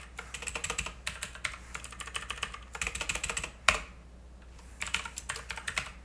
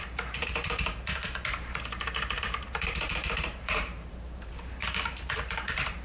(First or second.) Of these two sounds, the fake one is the second